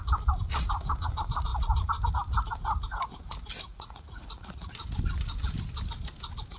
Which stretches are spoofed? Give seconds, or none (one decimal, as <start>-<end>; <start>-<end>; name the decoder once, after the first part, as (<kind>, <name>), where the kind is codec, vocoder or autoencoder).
3.7-4.7 (vocoder, Vocos)